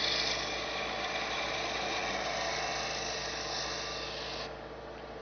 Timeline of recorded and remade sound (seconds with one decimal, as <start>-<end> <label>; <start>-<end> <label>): 0.0-5.2 recorded